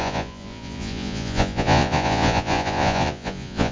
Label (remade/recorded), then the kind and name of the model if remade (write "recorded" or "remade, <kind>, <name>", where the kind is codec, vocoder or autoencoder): remade, vocoder, Vocos